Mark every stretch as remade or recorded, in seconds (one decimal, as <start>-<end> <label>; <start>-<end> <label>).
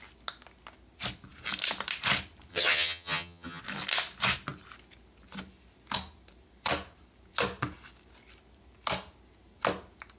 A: 0.0-2.5 recorded; 2.5-3.6 remade; 3.6-10.2 recorded